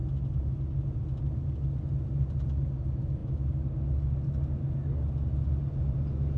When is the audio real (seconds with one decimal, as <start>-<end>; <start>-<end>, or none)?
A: 0.0-6.4